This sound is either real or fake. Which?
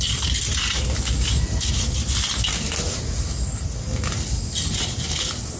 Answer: real